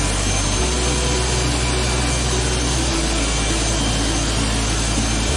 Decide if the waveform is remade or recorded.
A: recorded